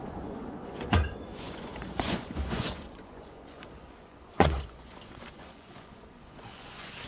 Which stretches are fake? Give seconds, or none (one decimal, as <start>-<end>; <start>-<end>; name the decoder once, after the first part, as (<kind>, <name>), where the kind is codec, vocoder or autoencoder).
0.0-7.1 (vocoder, Vocos)